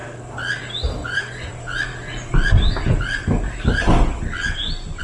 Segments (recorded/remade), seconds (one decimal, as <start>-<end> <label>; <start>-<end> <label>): 0.0-1.0 recorded; 1.0-1.5 remade; 1.5-5.0 recorded